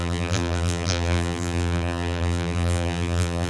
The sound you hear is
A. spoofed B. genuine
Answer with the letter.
A